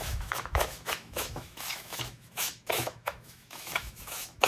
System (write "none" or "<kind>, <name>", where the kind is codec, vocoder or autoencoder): autoencoder, DAC-VAE